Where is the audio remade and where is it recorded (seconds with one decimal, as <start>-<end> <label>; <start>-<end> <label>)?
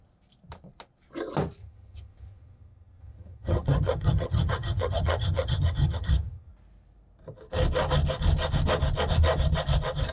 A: 0.0-1.6 recorded; 1.6-6.5 remade; 6.5-10.1 recorded